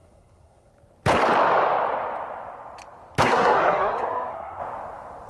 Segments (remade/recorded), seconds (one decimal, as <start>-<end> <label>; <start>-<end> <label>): 0.0-0.7 remade; 0.7-3.2 recorded; 3.2-4.6 remade; 4.6-5.3 recorded